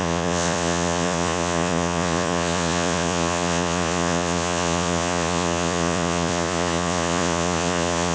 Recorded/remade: remade